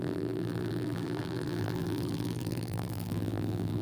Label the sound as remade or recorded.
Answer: remade